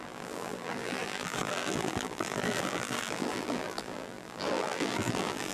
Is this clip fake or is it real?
fake